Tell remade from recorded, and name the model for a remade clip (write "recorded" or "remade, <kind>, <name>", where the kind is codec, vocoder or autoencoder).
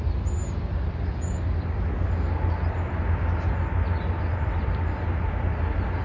recorded